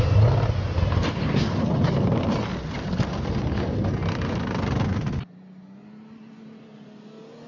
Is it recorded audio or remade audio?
recorded